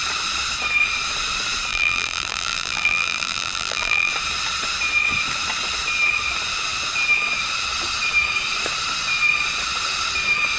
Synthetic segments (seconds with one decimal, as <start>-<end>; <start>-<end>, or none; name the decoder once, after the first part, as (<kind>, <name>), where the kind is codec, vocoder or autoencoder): 1.7-4.1 (vocoder, BigVGAN v2)